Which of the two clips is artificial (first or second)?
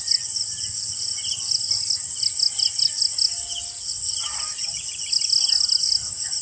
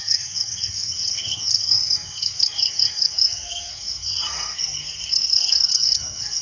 second